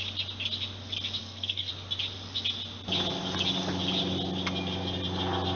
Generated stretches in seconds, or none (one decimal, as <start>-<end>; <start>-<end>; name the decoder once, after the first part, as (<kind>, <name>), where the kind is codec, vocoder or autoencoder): 1.2-1.7 (codec, SNAC)